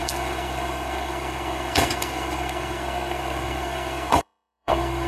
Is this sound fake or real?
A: fake